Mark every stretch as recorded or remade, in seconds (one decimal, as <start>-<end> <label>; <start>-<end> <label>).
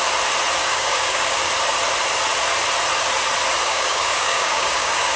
0.0-0.6 recorded; 0.6-1.5 remade; 1.5-3.7 recorded; 3.7-5.2 remade